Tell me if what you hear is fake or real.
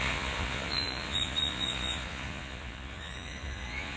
fake